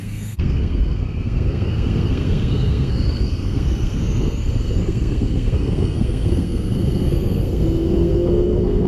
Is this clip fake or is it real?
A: fake